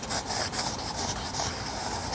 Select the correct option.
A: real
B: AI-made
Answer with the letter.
A